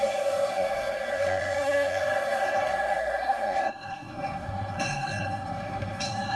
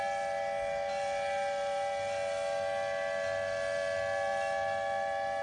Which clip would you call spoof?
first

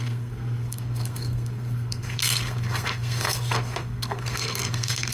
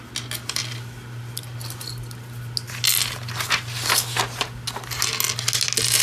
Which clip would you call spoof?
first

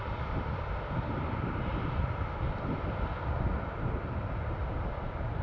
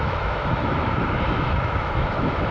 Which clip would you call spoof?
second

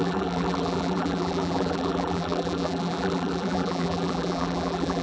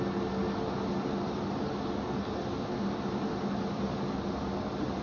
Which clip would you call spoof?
first